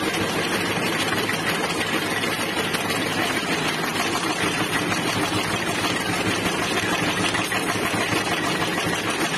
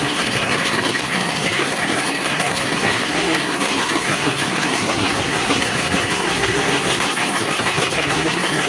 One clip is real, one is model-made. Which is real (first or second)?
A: first